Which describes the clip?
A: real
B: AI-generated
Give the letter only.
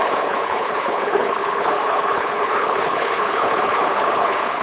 B